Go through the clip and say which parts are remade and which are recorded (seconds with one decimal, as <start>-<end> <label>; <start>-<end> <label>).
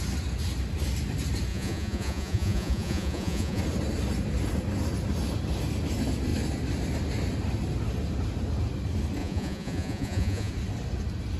0.0-1.5 recorded; 1.5-3.6 remade; 3.6-9.2 recorded; 9.2-10.5 remade; 10.5-11.4 recorded